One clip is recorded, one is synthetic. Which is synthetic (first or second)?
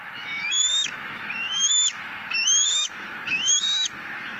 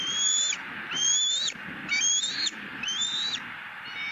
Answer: first